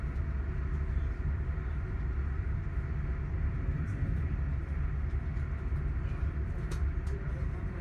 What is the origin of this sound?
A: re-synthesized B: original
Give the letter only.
B